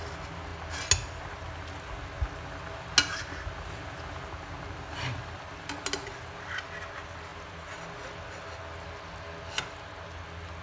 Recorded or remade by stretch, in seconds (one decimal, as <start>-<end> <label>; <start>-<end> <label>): 0.0-10.6 recorded